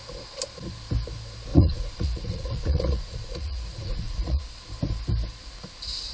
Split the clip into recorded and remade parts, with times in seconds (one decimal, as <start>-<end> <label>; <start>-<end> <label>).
0.0-1.5 recorded; 1.5-4.4 remade; 4.4-6.1 recorded